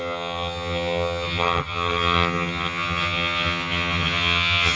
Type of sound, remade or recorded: remade